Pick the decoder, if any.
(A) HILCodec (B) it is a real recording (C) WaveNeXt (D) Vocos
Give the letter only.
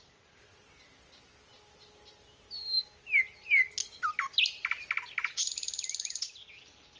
B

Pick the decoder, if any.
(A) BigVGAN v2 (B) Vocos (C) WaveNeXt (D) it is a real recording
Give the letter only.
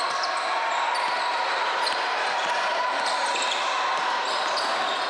D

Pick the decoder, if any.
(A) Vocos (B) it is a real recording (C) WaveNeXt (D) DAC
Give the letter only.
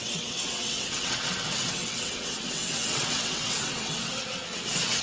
C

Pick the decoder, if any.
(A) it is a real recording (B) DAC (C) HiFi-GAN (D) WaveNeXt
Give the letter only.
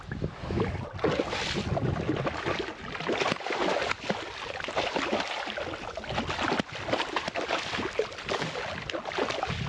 A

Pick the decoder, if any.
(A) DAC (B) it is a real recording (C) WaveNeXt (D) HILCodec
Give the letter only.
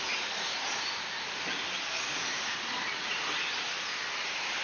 B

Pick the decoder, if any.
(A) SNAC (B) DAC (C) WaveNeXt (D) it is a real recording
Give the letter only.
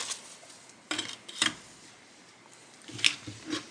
D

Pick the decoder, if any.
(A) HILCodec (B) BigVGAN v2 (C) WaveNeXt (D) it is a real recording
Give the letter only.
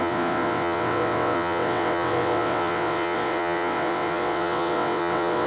C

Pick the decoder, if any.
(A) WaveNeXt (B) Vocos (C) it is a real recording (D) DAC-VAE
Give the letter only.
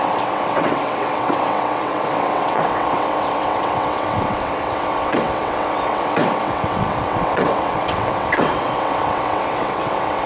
A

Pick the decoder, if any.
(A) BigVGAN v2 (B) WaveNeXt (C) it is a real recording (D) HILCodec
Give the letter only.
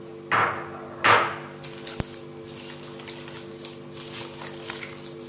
C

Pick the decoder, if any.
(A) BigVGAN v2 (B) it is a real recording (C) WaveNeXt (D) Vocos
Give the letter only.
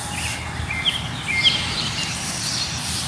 B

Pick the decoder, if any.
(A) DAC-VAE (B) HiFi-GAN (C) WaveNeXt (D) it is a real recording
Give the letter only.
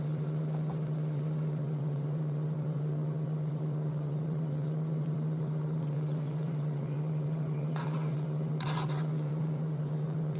C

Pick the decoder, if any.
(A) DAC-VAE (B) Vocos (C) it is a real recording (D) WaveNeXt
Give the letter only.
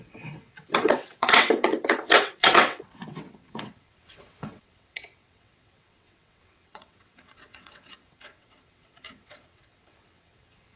D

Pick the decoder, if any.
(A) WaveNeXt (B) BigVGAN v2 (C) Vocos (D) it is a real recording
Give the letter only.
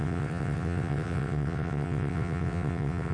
A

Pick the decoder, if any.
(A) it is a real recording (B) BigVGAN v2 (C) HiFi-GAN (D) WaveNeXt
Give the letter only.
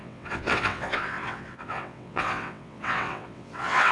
D